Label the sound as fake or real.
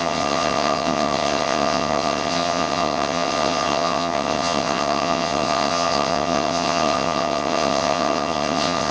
fake